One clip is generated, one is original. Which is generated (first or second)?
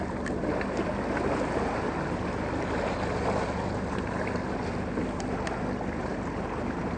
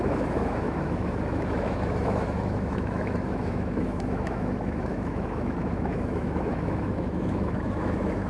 second